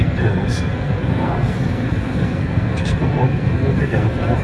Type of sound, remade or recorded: remade